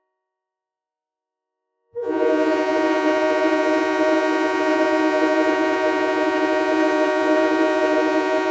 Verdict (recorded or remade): remade